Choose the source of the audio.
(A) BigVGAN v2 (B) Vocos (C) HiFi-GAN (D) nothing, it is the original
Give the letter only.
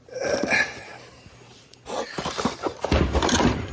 A